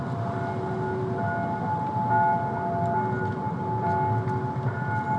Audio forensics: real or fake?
real